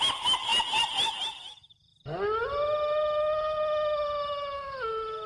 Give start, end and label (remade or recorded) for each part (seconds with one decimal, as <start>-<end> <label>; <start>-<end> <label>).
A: 0.0-1.9 remade; 1.9-5.3 recorded